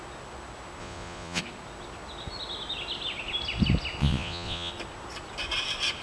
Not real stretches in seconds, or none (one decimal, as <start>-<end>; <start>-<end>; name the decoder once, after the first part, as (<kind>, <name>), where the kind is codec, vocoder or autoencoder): 0.8-1.4 (vocoder, Vocos); 4.0-4.7